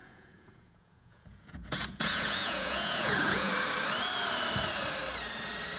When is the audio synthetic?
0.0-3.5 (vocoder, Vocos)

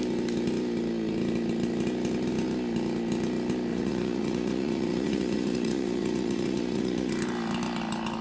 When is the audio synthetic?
3.7-7.1 (vocoder, Vocos)

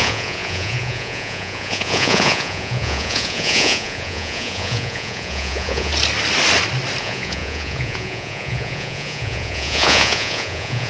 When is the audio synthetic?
0.0-5.9 (vocoder, Vocos); 7.0-10.9

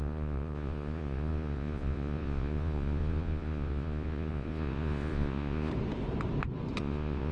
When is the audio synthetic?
0.0-5.7 (vocoder, Vocos); 6.8-7.3

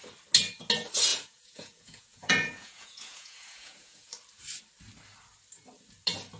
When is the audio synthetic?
1.1-4.1 (vocoder, Vocos)